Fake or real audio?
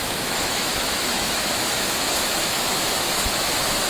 fake